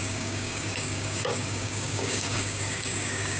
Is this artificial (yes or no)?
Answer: yes